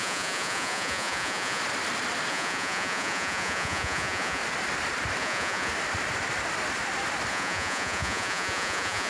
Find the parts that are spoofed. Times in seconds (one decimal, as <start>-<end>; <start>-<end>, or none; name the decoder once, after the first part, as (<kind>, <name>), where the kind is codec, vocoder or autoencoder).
0.0-1.6 (vocoder, Vocos); 2.3-4.4; 5.2-5.7; 7.3-9.1